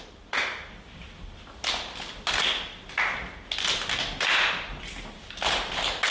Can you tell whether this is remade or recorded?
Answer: recorded